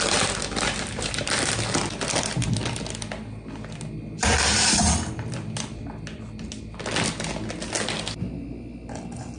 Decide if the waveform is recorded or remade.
recorded